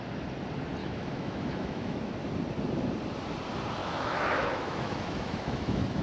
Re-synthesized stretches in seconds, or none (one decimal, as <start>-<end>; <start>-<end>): 0.8-2.0; 3.8-6.0